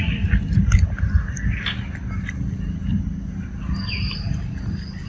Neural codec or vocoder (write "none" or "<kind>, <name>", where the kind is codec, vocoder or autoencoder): none